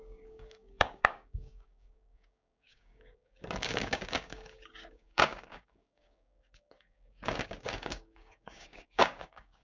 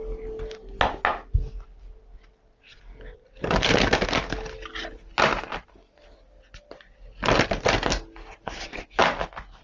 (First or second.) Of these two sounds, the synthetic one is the first